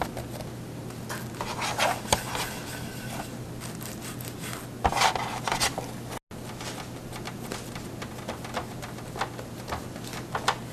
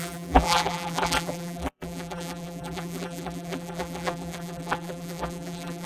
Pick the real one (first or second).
first